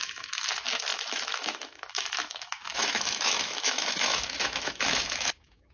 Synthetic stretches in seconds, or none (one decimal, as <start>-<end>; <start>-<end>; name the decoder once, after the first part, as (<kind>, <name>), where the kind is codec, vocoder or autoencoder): 0.0-5.7 (autoencoder, DAC-VAE)